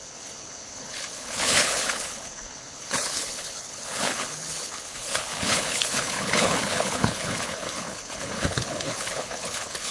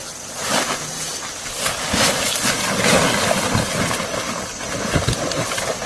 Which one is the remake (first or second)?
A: first